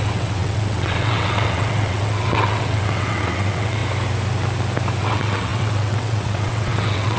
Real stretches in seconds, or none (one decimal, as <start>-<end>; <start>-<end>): 3.8-5.0